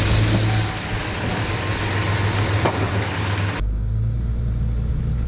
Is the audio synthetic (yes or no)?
no